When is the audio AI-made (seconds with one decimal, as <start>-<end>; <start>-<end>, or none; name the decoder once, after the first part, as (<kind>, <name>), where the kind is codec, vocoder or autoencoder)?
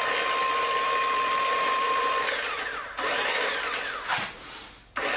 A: 0.4-3.5 (vocoder, BigVGAN v2)